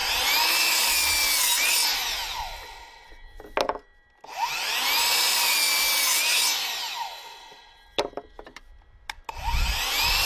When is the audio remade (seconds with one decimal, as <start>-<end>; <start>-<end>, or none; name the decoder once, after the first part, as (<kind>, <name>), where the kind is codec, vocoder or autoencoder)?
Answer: none